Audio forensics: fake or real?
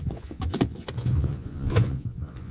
fake